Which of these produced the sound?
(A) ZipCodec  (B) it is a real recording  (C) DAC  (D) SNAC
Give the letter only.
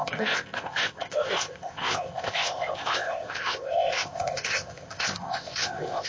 A